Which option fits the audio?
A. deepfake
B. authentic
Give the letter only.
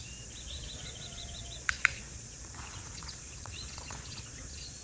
A